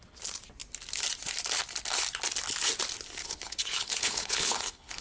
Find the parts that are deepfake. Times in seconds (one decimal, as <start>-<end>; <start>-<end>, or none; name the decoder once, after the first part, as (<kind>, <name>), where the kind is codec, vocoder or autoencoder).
3.2-5.0 (codec, HILCodec)